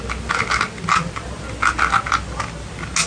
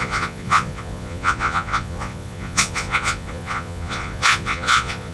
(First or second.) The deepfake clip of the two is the second